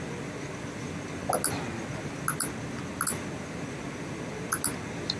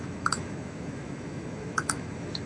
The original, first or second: first